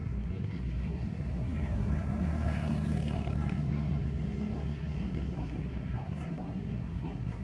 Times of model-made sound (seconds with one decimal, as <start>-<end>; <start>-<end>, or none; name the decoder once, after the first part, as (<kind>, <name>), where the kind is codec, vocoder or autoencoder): 0.0-7.4 (codec, SNAC)